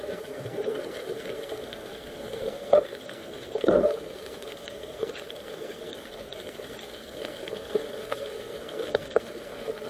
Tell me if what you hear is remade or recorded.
remade